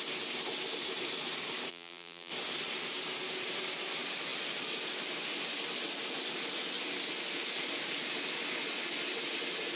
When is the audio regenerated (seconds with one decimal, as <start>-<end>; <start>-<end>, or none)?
1.7-2.3